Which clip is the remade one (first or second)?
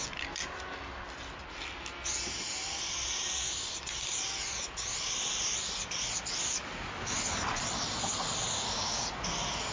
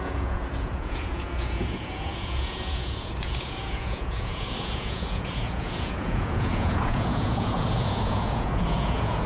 second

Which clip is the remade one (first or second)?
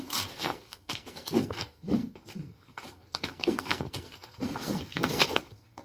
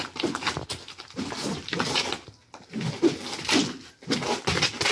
first